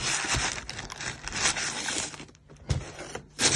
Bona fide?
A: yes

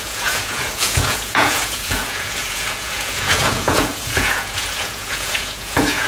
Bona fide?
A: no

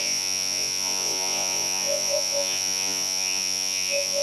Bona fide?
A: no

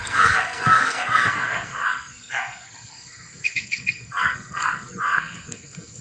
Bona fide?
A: no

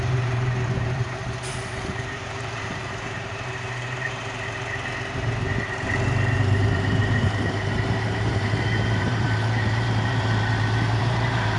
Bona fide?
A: no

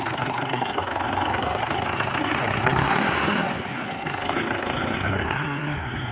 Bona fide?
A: no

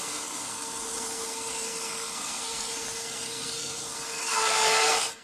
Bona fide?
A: no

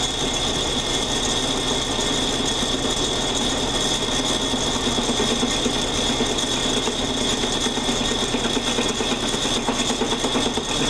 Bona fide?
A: yes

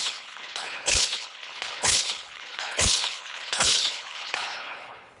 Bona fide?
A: no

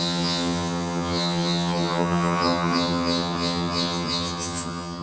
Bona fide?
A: no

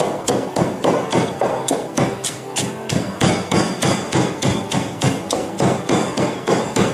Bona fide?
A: no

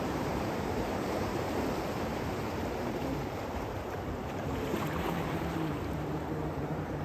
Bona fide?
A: no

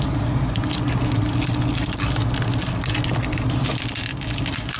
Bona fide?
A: yes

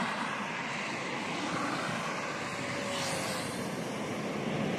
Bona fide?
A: yes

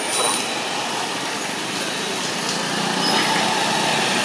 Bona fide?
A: yes